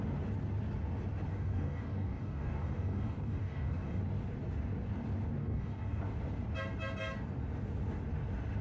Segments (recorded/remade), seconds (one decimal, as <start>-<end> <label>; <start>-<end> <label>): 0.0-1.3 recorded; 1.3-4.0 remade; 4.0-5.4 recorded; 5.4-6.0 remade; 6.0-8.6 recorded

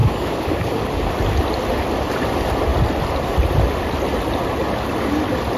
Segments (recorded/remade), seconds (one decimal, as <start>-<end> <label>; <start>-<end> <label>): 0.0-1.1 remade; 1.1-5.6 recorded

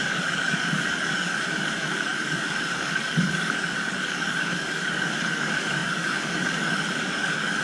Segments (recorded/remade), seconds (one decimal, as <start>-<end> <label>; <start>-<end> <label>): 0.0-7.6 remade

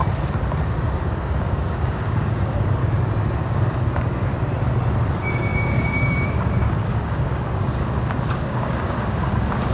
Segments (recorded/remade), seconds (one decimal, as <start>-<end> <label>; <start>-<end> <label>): 0.0-0.8 recorded; 0.8-2.8 remade; 2.8-3.4 recorded; 3.4-4.3 remade; 4.3-5.1 recorded; 5.1-9.7 remade

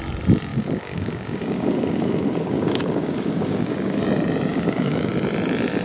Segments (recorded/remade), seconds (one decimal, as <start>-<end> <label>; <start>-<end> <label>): 0.0-0.5 recorded; 0.5-4.0 remade; 4.0-4.5 recorded; 4.5-5.1 remade; 5.1-5.8 recorded

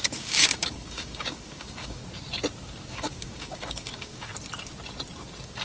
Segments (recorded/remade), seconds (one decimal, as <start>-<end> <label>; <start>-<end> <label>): 0.0-2.0 remade; 2.0-2.9 recorded; 2.9-4.3 remade; 4.3-5.6 recorded

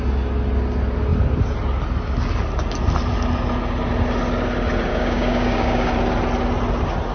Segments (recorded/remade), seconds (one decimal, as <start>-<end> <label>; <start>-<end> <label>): 0.0-4.9 recorded; 4.9-5.9 remade; 5.9-7.1 recorded